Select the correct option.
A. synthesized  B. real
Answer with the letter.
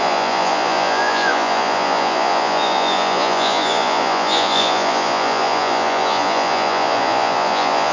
A